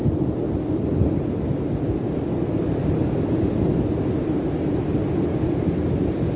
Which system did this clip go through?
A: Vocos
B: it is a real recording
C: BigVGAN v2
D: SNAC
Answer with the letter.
B